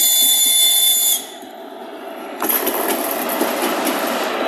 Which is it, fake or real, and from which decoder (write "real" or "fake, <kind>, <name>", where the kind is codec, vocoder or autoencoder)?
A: real